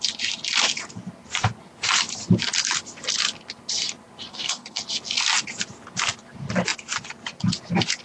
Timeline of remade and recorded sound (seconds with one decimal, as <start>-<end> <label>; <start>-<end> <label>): 0.0-4.3 recorded; 4.3-4.8 remade; 4.8-8.0 recorded